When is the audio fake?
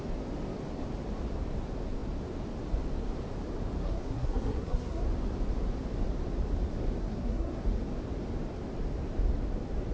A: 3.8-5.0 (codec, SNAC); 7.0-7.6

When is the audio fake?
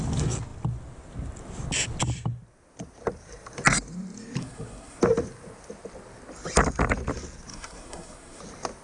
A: 4.4-5.0 (codec, SNAC); 7.5-8.4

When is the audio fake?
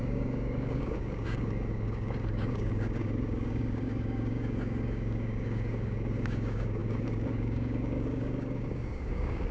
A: 0.0-9.5 (codec, DAC)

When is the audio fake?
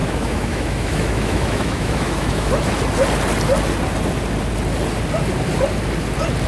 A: 0.0-2.5 (autoencoder, DAC-VAE)